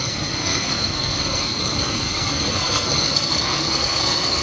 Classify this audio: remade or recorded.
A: remade